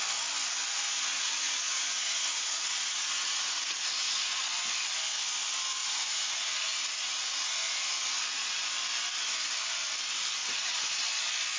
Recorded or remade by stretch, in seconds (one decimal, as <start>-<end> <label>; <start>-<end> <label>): 0.0-1.1 recorded; 1.1-4.4 remade; 4.4-5.8 recorded; 5.8-8.6 remade; 8.6-10.4 recorded; 10.4-11.0 remade; 11.0-11.6 recorded